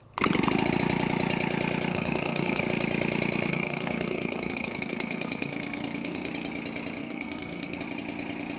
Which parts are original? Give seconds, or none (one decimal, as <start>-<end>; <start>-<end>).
0.0-1.9; 2.6-3.5; 6.3-7.0; 7.8-8.6